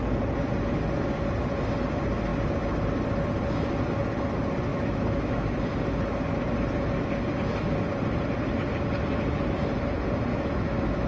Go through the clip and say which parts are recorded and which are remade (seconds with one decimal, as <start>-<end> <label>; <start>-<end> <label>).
0.0-4.7 recorded; 4.7-5.6 remade; 5.6-10.3 recorded; 10.3-11.1 remade